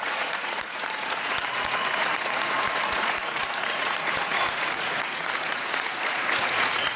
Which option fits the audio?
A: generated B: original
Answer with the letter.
A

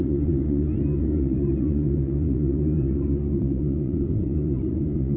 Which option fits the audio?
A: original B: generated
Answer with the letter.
B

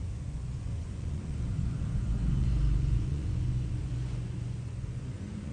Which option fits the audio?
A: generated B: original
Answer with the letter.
A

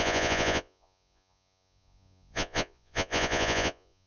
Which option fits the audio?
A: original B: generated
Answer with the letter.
B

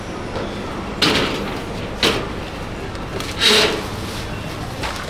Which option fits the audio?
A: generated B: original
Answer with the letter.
B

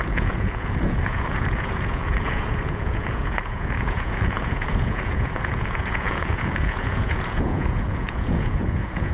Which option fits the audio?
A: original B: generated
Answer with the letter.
B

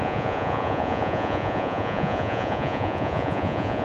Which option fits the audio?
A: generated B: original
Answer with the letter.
A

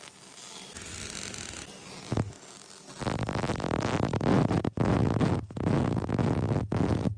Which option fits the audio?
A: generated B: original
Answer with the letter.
B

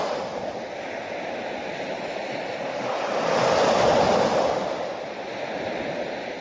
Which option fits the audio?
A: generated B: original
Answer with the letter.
B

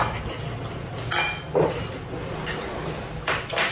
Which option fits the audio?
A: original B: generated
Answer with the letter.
A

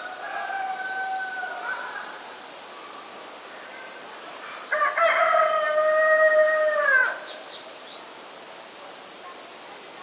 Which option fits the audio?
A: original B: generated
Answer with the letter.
A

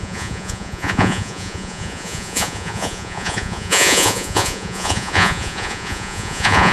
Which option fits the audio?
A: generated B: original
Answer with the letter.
A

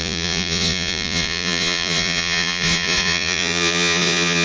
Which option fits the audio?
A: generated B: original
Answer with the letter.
A